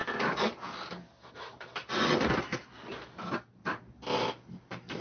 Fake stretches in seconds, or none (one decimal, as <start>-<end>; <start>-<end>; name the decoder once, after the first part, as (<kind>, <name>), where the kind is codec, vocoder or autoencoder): none